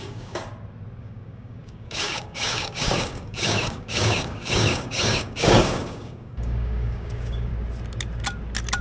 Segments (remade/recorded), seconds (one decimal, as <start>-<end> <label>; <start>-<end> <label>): 0.0-0.4 remade; 0.4-1.0 recorded; 1.0-7.5 remade; 7.5-8.8 recorded